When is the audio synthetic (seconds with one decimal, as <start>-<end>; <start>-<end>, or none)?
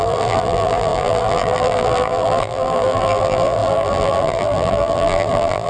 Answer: 0.0-5.7